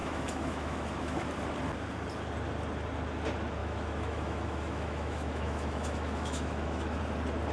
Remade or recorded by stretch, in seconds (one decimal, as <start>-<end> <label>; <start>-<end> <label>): 0.0-1.3 remade; 1.3-3.6 recorded; 3.6-7.0 remade; 7.0-7.5 recorded